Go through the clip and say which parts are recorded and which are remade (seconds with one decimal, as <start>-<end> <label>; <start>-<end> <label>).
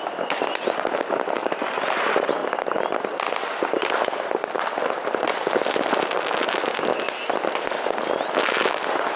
0.0-1.4 recorded; 1.4-1.9 remade; 1.9-2.4 recorded; 2.4-5.9 remade; 5.9-9.2 recorded